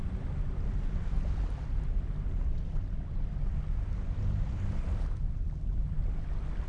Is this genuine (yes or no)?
yes